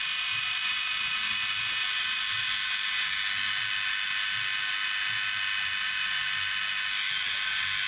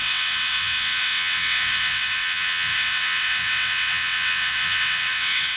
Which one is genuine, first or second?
first